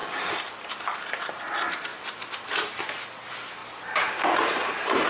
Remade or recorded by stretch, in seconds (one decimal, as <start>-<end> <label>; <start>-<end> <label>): 0.0-0.7 remade; 0.7-3.6 recorded; 3.6-4.2 remade; 4.2-5.1 recorded

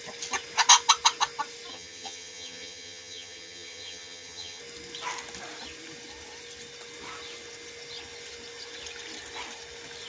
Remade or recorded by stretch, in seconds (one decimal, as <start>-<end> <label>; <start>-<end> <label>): 0.0-1.7 recorded; 1.7-4.6 remade; 4.6-10.1 recorded

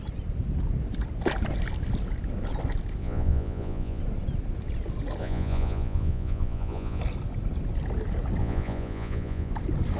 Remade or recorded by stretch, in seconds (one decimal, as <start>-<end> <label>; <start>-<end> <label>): 0.0-3.0 recorded; 3.0-4.0 remade; 4.0-5.2 recorded; 5.2-7.0 remade; 7.0-8.4 recorded; 8.4-9.5 remade; 9.5-10.0 recorded

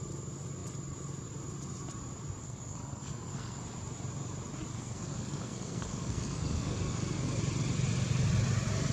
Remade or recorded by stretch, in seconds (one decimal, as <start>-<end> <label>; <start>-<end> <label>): 0.0-2.4 recorded; 2.4-3.6 remade; 3.6-4.7 recorded; 4.7-7.4 remade; 7.4-8.9 recorded